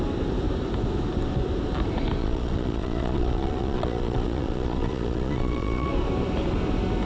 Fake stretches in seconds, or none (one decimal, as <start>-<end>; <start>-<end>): 2.2-5.9